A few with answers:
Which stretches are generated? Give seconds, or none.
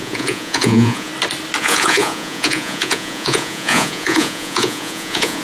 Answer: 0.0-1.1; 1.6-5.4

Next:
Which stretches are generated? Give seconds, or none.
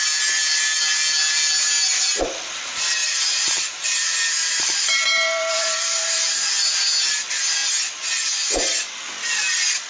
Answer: 3.0-6.8